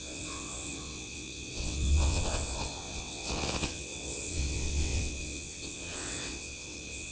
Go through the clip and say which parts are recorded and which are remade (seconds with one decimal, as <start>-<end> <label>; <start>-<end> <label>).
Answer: 0.0-7.1 remade